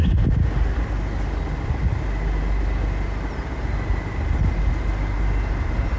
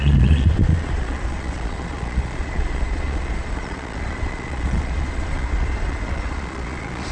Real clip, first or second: first